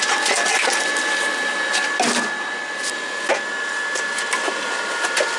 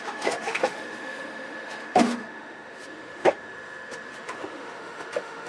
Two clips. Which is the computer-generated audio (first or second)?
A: second